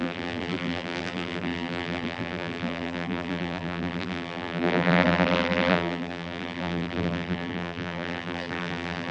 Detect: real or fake fake